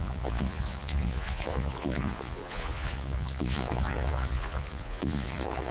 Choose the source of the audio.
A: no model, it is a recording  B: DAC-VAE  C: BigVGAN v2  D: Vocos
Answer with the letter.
D